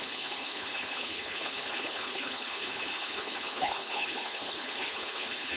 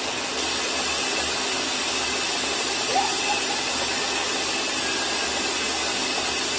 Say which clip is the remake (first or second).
first